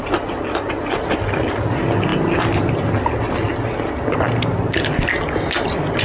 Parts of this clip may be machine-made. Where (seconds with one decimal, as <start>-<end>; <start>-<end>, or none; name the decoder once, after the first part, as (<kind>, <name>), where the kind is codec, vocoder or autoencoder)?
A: none